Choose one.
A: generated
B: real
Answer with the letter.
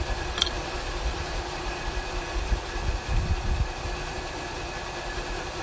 A